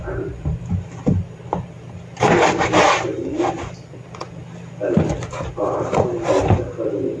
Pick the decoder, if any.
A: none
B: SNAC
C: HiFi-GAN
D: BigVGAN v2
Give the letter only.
D